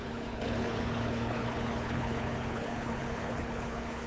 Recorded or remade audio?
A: remade